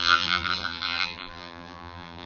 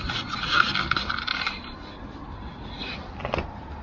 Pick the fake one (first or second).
first